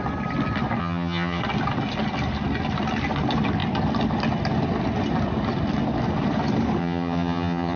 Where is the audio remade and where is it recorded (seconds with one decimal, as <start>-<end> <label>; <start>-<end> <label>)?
0.0-0.8 recorded; 0.8-1.4 remade; 1.4-6.8 recorded; 6.8-7.8 remade